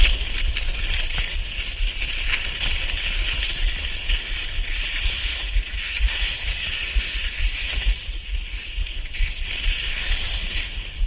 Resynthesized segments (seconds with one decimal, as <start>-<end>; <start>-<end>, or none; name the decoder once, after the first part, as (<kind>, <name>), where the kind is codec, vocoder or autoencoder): 5.3-9.0 (vocoder, Vocos)